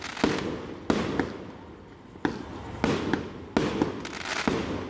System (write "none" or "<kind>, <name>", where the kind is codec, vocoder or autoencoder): none